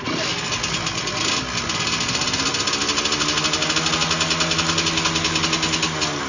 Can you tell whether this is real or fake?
real